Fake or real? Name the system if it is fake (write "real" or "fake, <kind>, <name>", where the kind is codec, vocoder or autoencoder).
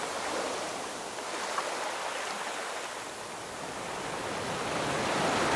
real